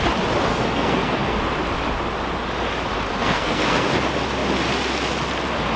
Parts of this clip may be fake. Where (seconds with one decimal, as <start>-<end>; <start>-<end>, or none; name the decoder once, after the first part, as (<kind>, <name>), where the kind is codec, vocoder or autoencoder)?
0.5-1.4 (codec, SNAC); 3.1-3.9